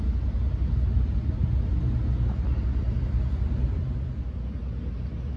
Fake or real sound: real